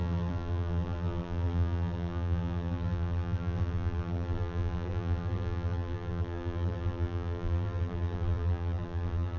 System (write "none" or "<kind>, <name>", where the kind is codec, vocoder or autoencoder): vocoder, BigVGAN v2